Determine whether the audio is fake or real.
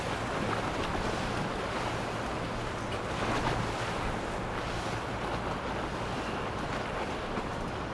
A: real